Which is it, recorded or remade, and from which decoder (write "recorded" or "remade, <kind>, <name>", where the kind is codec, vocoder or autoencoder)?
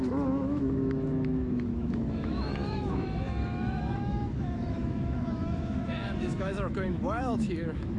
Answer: remade, autoencoder, DAC-VAE